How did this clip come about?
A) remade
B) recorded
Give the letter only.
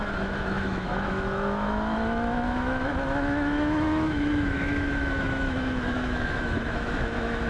A